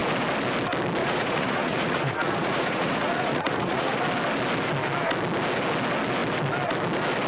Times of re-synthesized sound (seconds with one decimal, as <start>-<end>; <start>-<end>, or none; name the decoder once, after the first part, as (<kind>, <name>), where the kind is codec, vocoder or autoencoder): 1.0-4.0 (vocoder, Vocos)